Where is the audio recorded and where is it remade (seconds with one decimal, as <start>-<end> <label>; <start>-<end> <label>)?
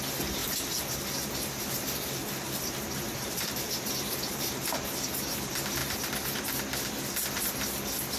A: 0.0-0.4 recorded; 0.4-4.6 remade; 4.6-8.2 recorded